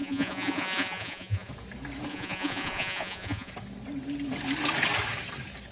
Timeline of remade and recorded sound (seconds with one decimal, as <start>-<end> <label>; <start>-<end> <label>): 0.0-1.5 remade; 1.5-2.1 recorded; 2.1-3.5 remade; 3.5-5.7 recorded